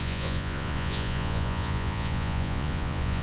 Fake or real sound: fake